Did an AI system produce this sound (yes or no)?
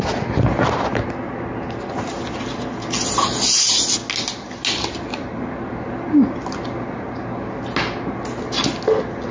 no